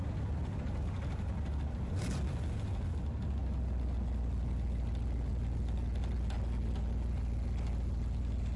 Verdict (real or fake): real